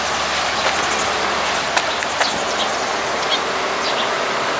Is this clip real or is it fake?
real